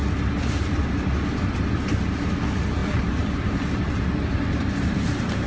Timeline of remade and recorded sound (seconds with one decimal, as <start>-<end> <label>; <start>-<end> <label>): 0.0-2.8 recorded; 2.8-5.5 remade